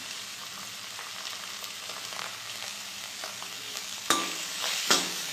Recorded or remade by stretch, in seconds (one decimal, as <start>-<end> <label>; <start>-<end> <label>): 0.0-0.4 remade; 0.4-2.1 recorded; 2.1-5.3 remade